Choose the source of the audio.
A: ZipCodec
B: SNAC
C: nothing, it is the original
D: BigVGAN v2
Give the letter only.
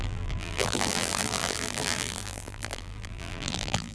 D